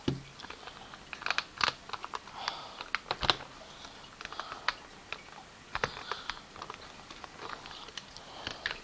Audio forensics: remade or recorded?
recorded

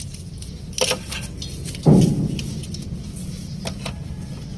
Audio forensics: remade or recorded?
recorded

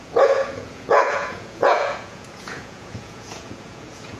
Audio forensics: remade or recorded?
remade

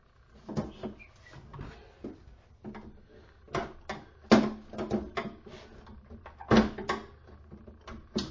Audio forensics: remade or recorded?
recorded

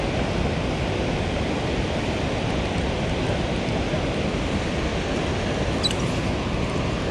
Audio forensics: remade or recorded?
recorded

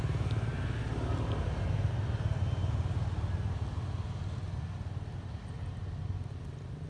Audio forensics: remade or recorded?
recorded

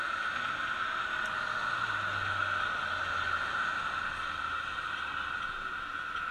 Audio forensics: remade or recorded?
recorded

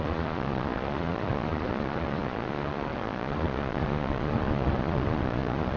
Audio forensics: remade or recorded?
remade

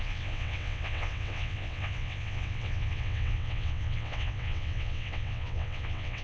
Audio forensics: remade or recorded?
remade